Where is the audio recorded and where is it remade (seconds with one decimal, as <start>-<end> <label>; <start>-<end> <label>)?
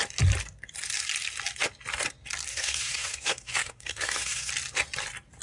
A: 0.0-2.5 recorded; 2.5-4.5 remade; 4.5-5.4 recorded